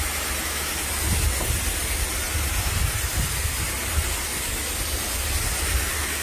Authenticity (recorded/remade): recorded